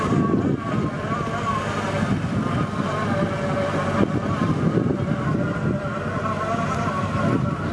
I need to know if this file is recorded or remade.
recorded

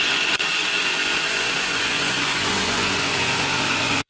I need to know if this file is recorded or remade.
remade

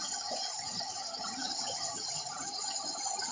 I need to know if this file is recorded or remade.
remade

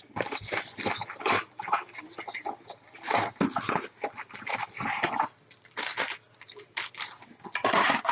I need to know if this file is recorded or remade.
recorded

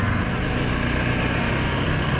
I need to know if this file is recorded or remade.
recorded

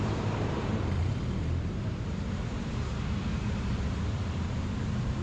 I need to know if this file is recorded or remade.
remade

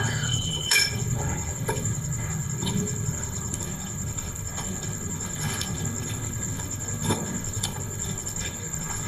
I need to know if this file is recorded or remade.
remade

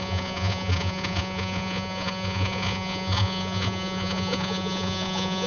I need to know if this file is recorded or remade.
remade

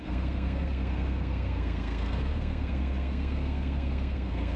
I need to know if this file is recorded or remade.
remade